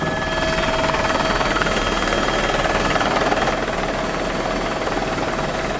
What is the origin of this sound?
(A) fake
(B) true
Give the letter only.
B